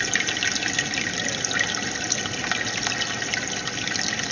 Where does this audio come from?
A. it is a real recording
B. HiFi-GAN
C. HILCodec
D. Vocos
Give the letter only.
A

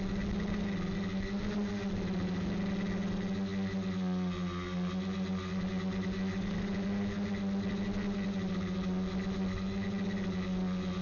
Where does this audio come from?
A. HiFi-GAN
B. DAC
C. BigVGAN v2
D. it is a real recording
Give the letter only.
D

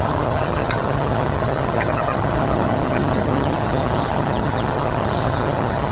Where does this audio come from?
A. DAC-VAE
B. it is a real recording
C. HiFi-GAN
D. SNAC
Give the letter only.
C